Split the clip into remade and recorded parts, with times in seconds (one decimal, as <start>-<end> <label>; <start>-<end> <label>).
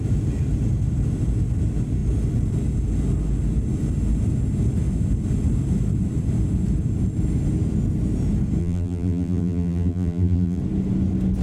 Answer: 0.0-8.6 recorded; 8.6-10.6 remade; 10.6-11.4 recorded